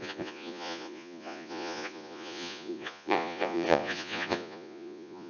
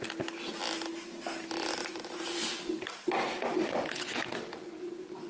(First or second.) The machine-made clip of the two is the first